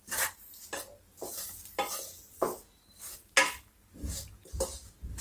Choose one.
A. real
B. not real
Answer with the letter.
A